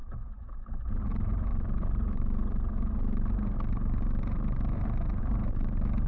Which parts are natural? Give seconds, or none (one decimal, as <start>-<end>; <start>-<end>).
none